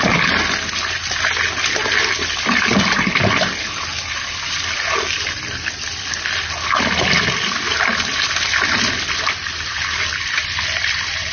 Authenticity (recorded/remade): recorded